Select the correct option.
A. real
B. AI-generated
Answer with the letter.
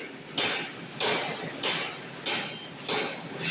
A